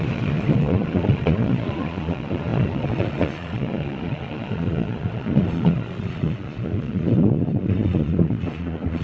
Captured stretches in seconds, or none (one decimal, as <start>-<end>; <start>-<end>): none